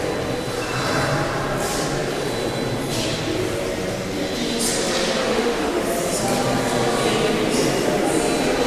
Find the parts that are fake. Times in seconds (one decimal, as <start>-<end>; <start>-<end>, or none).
5.2-5.8

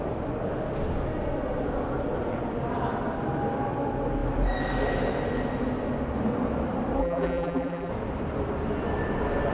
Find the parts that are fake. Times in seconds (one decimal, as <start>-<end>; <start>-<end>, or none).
7.0-7.9

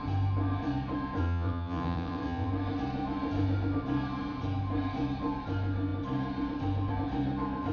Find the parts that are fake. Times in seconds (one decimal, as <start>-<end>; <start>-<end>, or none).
1.2-2.5